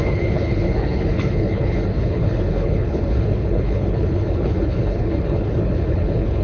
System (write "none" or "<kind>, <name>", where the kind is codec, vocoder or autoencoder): codec, HILCodec